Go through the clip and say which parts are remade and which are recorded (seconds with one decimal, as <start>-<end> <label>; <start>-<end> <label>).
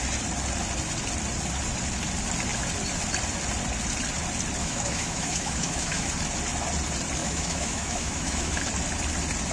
0.0-4.6 recorded; 4.6-6.1 remade; 6.1-7.2 recorded; 7.2-8.6 remade; 8.6-9.5 recorded